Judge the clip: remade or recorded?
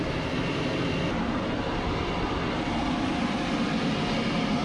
recorded